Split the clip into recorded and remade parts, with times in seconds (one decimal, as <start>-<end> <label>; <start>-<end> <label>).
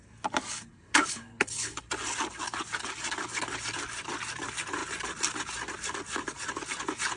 0.0-0.7 recorded; 0.7-1.9 remade; 1.9-7.2 recorded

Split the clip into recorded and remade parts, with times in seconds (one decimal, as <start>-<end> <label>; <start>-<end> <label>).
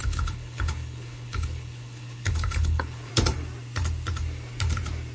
0.0-3.1 remade; 3.1-5.1 recorded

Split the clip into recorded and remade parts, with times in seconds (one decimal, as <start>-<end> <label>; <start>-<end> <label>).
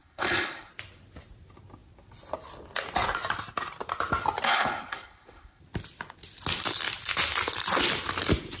0.0-0.7 remade; 0.7-4.5 recorded; 4.5-5.6 remade; 5.6-8.6 recorded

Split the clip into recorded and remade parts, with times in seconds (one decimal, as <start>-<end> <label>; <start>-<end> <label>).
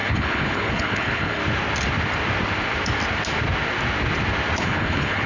0.0-1.4 remade; 1.4-4.6 recorded; 4.6-5.3 remade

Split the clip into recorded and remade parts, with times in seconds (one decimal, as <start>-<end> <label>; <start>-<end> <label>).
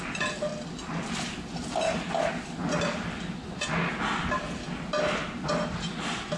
0.0-6.4 recorded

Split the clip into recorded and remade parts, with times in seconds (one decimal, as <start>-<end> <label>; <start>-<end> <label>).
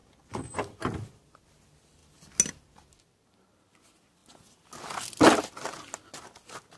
0.0-6.8 recorded